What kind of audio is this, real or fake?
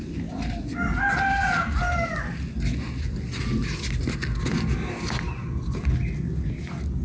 real